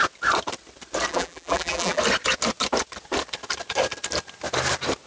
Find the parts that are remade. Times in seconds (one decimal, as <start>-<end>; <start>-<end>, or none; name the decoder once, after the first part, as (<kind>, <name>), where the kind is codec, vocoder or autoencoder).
1.1-2.0 (vocoder, BigVGAN v2)